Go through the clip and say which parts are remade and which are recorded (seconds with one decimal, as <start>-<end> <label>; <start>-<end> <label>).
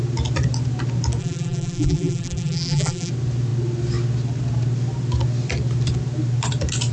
0.0-1.2 recorded; 1.2-3.1 remade; 3.1-6.9 recorded